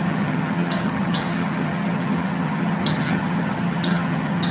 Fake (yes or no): yes